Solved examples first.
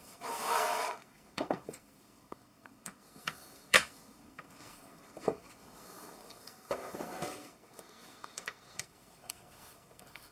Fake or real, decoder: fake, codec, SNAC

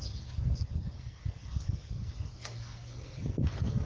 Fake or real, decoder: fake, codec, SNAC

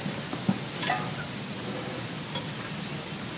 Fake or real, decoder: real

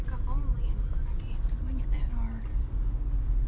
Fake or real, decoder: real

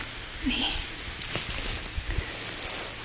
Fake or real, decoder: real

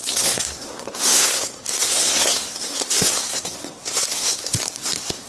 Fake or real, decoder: fake, codec, SNAC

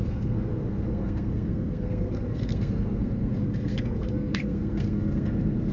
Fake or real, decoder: fake, codec, SNAC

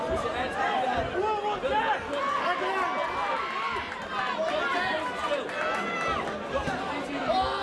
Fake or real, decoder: real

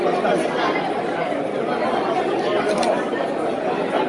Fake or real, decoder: real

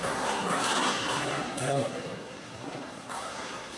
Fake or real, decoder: fake, codec, SNAC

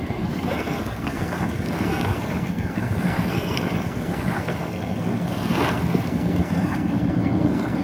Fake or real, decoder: fake, codec, SNAC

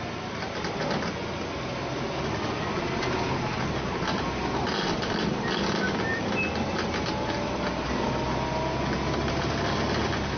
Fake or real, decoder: real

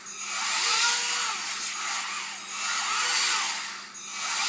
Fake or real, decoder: real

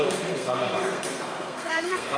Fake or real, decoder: fake, codec, SNAC